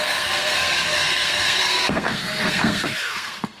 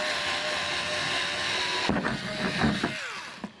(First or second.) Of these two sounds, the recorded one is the second